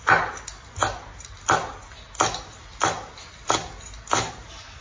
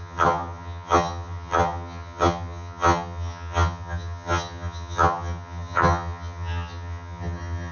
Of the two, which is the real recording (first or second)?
first